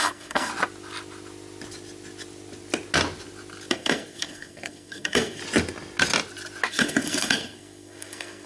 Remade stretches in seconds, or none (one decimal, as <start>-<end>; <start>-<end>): 0.0-0.5; 3.7-5.4; 6.7-8.5